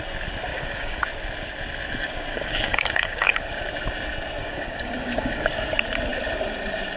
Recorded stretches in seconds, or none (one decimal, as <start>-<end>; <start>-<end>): 0.0-0.5; 1.0-2.3; 3.7-4.4; 5.5-7.0

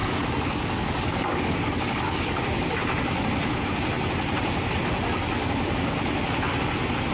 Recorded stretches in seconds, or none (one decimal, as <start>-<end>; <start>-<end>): 2.3-5.4; 6.0-7.1

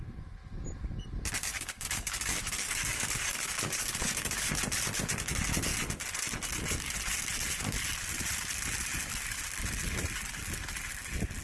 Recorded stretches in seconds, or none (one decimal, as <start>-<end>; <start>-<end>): 0.0-1.5; 4.5-11.4

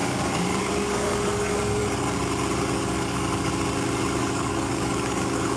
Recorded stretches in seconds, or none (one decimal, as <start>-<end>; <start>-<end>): 1.8-2.6; 3.5-4.2

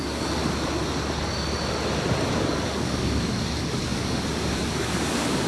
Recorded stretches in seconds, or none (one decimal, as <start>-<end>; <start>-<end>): 0.4-2.3

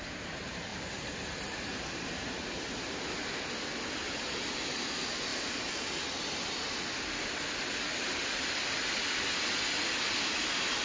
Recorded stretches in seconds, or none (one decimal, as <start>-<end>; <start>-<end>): 0.0-10.8